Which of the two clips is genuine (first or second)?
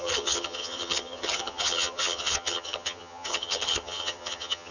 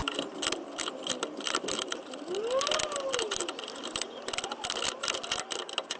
second